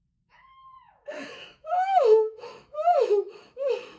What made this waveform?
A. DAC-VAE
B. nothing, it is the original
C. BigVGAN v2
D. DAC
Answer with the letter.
A